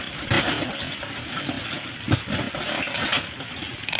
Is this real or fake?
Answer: real